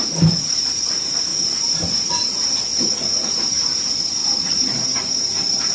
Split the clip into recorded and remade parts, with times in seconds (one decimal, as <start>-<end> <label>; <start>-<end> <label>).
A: 0.0-4.2 recorded; 4.2-5.7 remade